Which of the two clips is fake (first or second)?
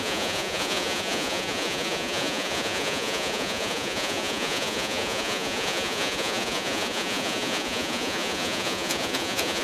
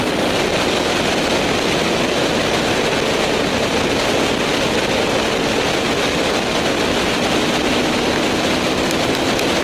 first